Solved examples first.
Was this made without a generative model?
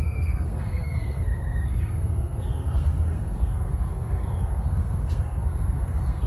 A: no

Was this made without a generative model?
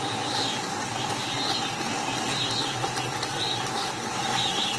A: yes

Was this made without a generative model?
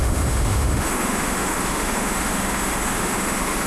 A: no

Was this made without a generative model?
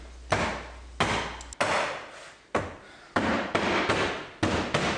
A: yes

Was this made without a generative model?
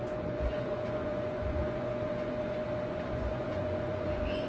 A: no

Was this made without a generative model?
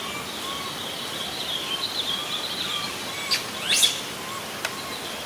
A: no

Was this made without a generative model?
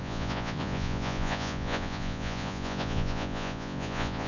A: no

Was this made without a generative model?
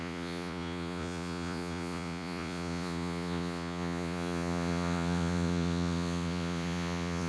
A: no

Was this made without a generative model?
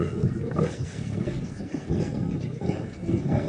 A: no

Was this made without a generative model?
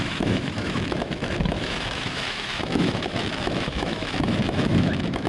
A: no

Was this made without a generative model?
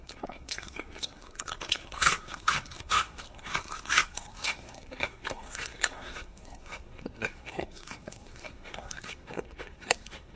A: no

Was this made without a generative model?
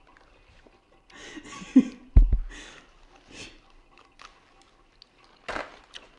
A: yes